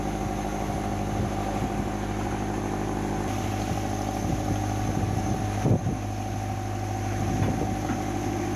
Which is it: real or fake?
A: real